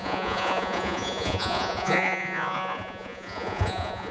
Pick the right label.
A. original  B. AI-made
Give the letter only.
B